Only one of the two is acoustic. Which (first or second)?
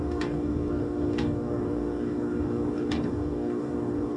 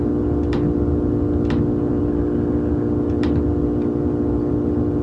second